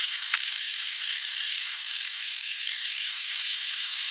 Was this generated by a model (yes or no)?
yes